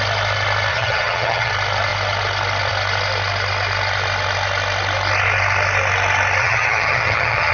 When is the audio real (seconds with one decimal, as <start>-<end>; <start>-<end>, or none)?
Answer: 0.0-0.7; 1.5-6.4